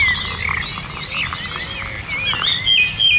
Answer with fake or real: real